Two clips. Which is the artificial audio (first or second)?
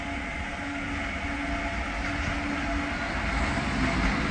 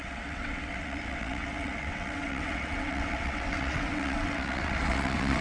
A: second